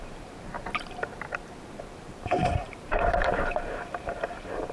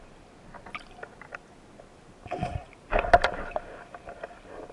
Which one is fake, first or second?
first